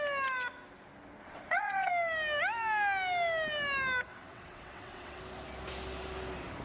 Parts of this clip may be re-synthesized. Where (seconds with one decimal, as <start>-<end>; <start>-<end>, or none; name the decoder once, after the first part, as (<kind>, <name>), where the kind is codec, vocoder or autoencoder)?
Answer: 1.2-1.9 (vocoder, WaveNeXt); 4.1-5.2